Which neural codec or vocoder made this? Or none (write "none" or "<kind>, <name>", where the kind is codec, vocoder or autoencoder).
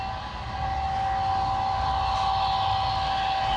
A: none